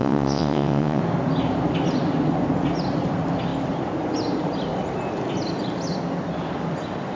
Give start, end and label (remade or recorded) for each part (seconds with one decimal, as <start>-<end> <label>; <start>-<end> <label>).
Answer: 0.0-1.0 remade; 1.0-7.2 recorded